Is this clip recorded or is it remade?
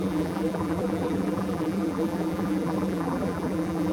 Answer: remade